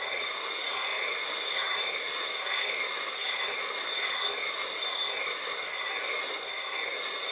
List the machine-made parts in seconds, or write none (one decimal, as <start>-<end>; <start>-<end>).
none